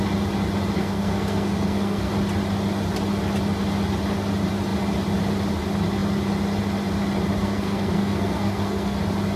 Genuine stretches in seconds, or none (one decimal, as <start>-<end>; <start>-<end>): 0.0-0.8; 2.1-7.4; 9.0-9.4